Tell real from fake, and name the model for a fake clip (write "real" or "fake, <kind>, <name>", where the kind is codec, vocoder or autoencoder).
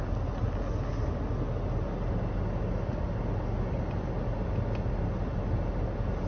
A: real